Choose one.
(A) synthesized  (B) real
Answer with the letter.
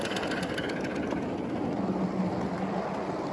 B